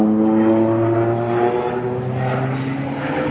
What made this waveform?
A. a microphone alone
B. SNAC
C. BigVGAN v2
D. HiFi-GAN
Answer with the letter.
A